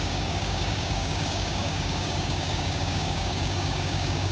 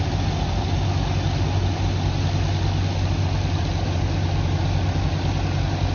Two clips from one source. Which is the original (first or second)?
second